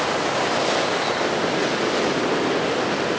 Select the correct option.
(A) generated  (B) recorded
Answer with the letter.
B